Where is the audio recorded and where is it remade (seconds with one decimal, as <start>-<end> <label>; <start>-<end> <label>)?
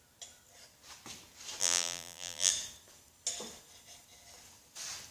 0.0-1.6 recorded; 1.6-2.5 remade; 2.5-5.1 recorded